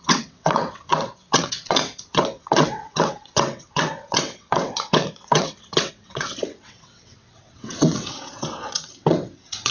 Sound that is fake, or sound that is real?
fake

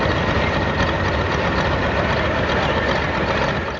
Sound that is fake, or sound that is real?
real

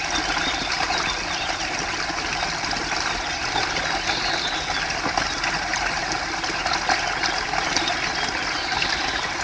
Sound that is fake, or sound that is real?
real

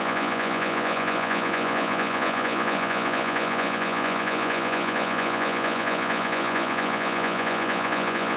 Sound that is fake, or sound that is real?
fake